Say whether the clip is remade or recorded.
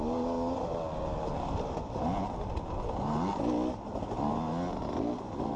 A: recorded